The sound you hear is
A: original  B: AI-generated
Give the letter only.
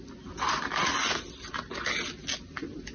A